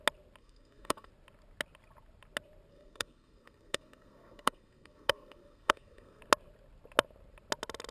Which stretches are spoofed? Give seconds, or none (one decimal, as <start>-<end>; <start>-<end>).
0.4-1.1; 2.7-6.2